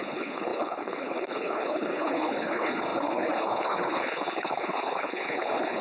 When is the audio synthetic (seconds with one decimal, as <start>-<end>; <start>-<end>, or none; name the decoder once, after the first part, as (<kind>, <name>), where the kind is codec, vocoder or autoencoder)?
0.0-5.8 (codec, HILCodec)